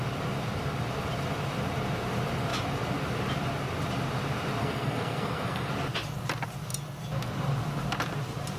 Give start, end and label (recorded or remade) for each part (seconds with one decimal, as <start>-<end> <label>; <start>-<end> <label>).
0.0-4.6 recorded; 4.6-5.7 remade; 5.7-8.6 recorded